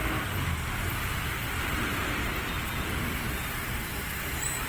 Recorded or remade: recorded